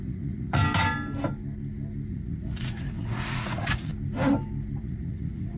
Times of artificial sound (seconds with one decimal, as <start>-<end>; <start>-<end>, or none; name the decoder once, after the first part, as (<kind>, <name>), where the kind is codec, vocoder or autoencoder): 0.0-0.6 (vocoder, Vocos); 2.1-3.9; 4.8-5.6

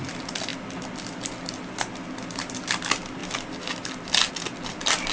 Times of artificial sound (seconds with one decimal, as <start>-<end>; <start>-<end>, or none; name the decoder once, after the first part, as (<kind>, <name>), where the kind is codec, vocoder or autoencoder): none